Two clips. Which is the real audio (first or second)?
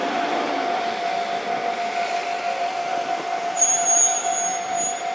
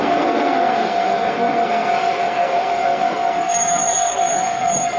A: first